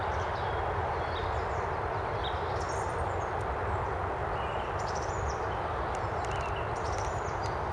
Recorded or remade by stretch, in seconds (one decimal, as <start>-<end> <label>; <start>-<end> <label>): 0.0-1.2 recorded; 1.2-5.8 remade; 5.8-7.7 recorded